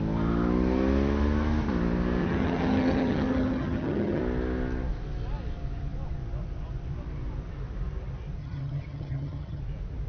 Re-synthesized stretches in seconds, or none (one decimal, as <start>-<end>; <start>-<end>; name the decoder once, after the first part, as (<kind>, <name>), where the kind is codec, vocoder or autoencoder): 2.2-4.2 (vocoder, HiFi-GAN); 8.4-9.6